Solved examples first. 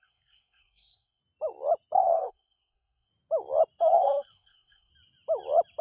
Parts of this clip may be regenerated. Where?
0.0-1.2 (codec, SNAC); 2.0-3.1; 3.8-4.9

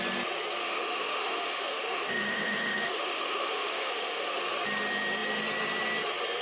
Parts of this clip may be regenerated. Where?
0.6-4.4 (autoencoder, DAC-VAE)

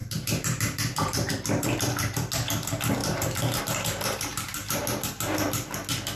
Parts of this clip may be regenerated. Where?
0.0-1.3 (vocoder, BigVGAN v2); 3.0-3.6; 4.3-4.8